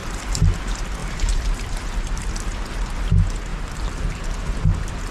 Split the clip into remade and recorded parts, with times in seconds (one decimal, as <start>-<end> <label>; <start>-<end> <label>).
0.0-0.6 remade; 0.6-1.0 recorded; 1.0-2.3 remade; 2.3-5.1 recorded